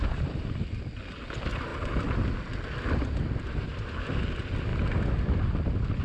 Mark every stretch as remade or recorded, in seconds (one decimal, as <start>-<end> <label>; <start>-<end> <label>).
0.0-6.0 recorded